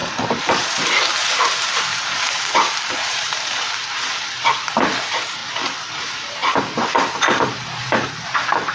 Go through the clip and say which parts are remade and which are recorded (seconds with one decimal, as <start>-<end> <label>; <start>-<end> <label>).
0.0-5.4 remade; 5.4-5.9 recorded; 5.9-6.4 remade; 6.4-7.1 recorded; 7.1-8.7 remade